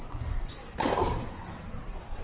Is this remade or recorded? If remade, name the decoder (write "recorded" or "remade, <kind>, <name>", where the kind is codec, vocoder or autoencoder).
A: recorded